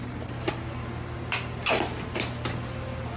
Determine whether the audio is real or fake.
real